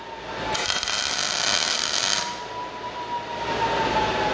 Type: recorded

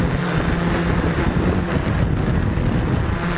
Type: recorded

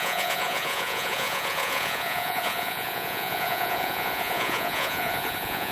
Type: remade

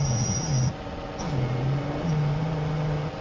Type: recorded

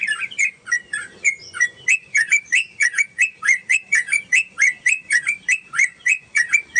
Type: remade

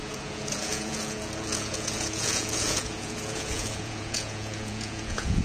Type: remade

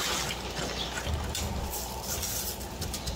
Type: recorded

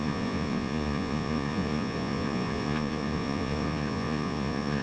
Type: remade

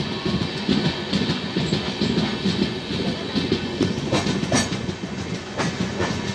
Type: remade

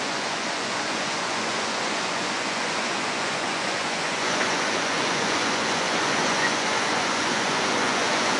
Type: remade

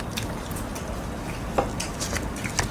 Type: recorded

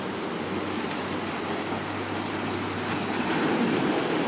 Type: recorded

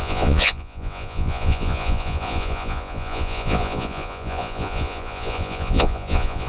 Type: remade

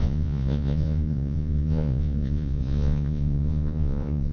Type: remade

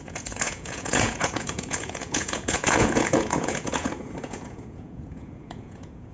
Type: remade